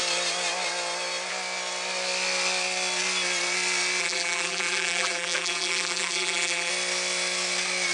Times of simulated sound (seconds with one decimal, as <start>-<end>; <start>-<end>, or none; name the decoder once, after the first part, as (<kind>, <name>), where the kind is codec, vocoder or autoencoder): 4.0-6.7 (vocoder, BigVGAN v2)